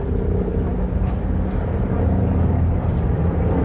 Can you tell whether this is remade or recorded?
recorded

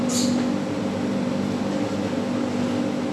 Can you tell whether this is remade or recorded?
recorded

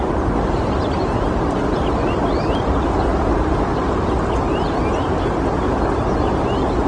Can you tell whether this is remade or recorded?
recorded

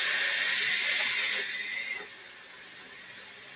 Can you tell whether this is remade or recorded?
recorded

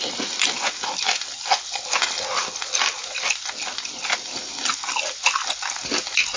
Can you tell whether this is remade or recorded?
recorded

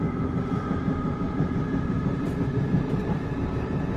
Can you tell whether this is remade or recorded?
remade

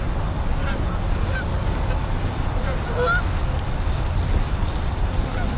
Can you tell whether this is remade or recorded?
recorded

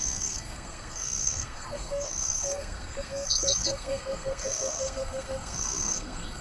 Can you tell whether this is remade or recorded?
remade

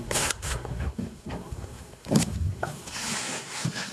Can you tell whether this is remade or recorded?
remade